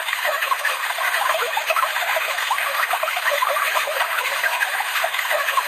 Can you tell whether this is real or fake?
fake